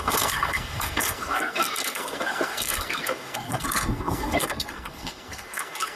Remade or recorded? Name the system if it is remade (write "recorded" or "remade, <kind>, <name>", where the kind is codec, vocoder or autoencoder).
remade, codec, SNAC